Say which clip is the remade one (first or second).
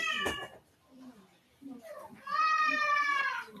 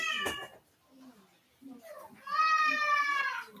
first